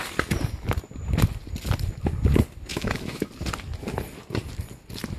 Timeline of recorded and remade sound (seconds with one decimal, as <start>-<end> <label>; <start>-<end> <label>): 0.0-2.7 recorded; 2.7-3.3 remade; 3.3-5.2 recorded